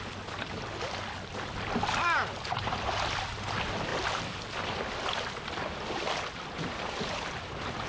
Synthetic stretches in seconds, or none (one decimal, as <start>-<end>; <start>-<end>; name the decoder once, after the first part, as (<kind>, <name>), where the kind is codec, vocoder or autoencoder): none